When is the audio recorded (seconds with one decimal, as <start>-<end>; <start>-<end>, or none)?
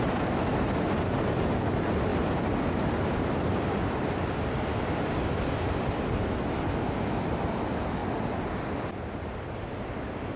8.0-10.4